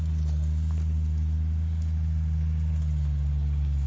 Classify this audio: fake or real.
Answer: real